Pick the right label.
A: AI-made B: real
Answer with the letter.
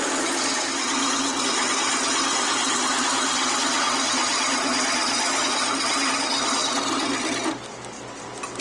B